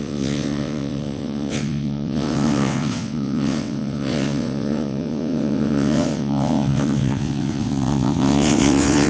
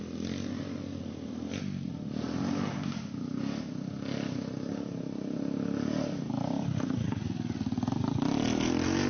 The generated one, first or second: first